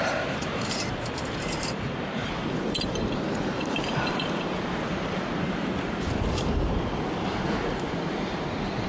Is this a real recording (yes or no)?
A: no